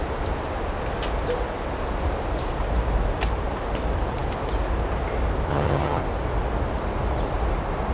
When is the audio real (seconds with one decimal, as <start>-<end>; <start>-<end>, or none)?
0.0-5.5; 6.0-7.9